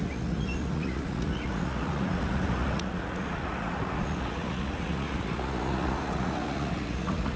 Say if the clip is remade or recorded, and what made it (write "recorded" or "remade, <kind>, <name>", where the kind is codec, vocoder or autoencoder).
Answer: remade, vocoder, Vocos